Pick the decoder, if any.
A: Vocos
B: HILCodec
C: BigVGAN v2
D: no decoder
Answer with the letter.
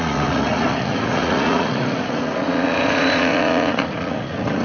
A